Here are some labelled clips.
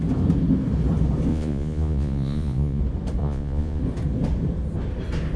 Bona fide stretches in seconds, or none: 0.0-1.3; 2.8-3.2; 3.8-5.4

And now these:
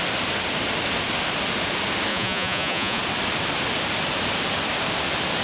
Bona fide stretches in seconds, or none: 0.0-2.1; 3.0-5.4

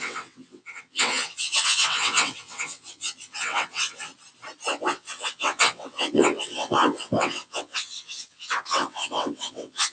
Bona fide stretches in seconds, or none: 4.1-4.7

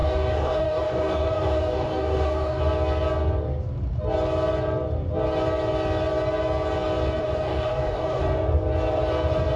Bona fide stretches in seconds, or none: 2.6-7.2; 8.2-9.6